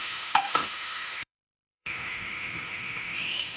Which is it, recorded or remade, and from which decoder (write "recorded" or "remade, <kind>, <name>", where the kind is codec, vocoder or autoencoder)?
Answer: remade, autoencoder, DAC-VAE